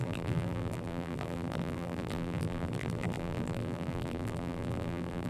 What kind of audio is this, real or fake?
fake